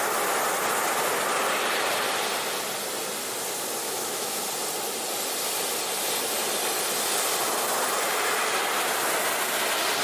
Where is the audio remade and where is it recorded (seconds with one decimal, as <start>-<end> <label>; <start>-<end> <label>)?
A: 0.0-3.8 recorded; 3.8-4.4 remade; 4.4-10.0 recorded